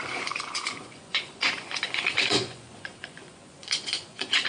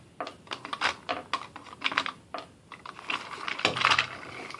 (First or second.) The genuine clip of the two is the second